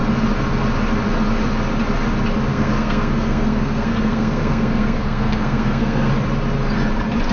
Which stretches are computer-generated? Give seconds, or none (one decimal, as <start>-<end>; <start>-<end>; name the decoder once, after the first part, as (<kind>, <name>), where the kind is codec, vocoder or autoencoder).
2.5-6.1 (codec, SNAC)